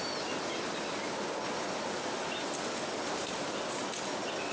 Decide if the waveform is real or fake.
real